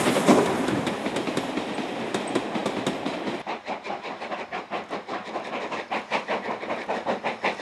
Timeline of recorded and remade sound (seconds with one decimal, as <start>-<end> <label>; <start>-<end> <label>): 0.0-7.6 recorded